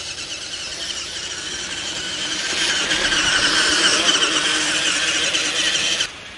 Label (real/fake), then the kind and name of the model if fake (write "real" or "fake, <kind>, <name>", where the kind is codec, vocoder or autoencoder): real